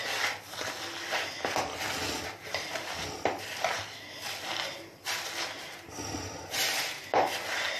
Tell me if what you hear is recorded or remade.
recorded